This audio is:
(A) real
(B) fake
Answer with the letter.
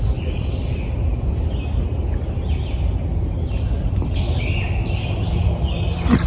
A